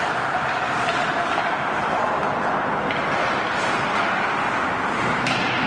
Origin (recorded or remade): remade